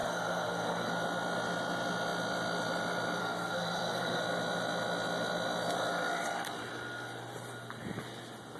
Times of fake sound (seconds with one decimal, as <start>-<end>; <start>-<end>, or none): 0.0-0.9; 3.2-4.2